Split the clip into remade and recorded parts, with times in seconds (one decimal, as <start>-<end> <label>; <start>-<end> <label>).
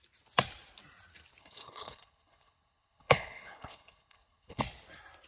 0.0-1.4 recorded; 1.4-4.6 remade; 4.6-5.3 recorded